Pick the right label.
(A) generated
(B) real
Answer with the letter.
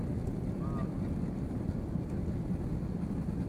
B